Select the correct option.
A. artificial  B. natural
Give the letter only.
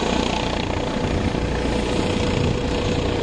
B